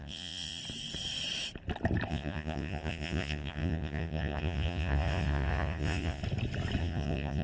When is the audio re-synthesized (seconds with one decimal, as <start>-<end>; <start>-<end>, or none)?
0.0-0.6; 2.1-6.2; 6.8-7.4